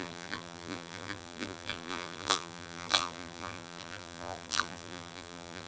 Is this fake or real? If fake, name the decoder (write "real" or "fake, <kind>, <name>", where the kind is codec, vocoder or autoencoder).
fake, vocoder, BigVGAN v2